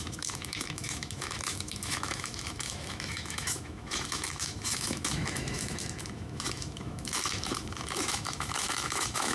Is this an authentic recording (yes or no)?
no